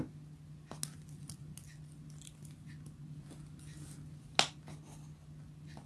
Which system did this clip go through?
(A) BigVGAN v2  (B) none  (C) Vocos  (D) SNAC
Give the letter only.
B